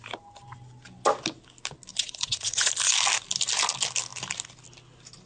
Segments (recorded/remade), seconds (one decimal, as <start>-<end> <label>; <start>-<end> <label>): 0.0-1.9 recorded; 1.9-2.7 remade; 2.7-5.3 recorded